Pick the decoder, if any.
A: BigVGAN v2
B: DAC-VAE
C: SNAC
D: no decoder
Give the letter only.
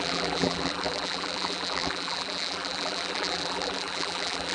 A